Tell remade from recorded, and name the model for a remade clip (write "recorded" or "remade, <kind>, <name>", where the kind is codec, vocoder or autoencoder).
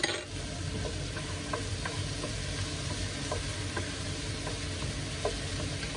recorded